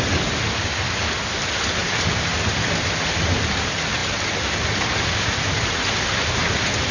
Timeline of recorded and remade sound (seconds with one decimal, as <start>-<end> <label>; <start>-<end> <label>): 0.0-6.9 recorded